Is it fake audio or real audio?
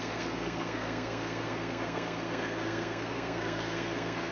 fake